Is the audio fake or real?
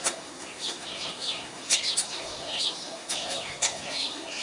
fake